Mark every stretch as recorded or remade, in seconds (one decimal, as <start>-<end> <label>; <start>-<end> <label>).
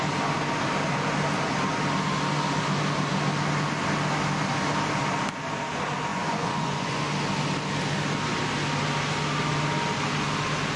0.0-6.1 recorded; 6.1-7.0 remade; 7.0-10.8 recorded